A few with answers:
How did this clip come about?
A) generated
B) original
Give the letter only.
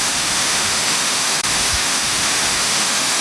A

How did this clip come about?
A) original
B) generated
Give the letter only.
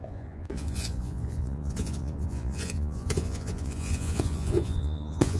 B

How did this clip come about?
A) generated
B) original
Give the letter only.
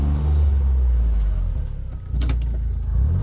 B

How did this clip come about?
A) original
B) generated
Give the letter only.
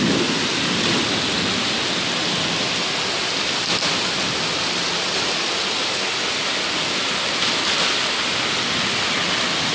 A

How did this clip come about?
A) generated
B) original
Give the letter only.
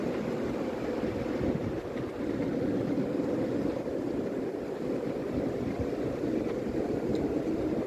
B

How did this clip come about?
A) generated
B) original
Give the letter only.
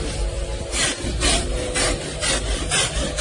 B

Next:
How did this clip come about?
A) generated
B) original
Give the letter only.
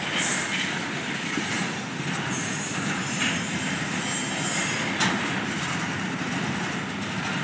B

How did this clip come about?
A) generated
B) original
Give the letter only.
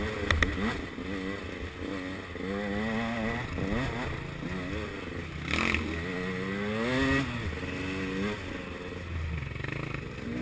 B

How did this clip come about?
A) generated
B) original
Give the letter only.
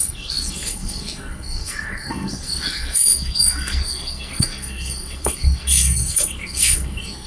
A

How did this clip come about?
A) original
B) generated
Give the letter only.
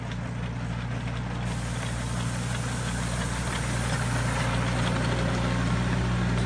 A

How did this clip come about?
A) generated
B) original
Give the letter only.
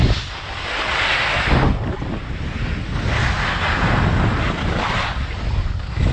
B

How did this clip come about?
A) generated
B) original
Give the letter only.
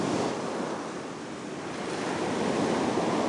B